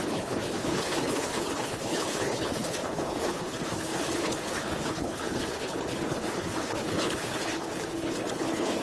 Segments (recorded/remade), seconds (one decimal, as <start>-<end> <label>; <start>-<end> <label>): 0.0-8.8 remade